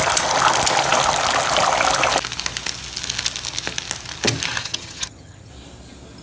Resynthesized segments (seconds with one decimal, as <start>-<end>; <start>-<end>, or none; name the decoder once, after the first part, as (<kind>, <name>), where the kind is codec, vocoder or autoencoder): 4.6-5.5 (vocoder, HiFi-GAN)